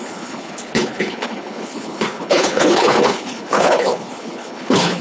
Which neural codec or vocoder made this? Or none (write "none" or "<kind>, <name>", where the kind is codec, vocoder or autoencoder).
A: codec, HILCodec